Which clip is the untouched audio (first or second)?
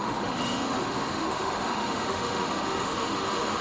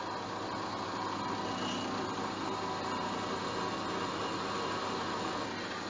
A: second